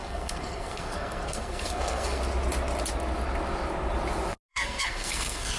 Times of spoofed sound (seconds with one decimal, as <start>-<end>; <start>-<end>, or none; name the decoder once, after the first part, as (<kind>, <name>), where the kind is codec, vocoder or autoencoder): 0.0-2.2 (codec, SNAC); 4.5-5.6